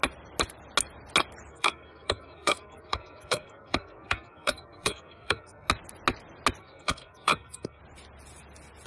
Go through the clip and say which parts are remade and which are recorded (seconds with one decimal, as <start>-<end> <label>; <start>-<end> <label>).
0.0-1.5 recorded; 1.5-5.7 remade; 5.7-6.6 recorded; 6.6-7.8 remade; 7.8-8.9 recorded